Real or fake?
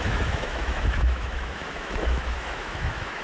fake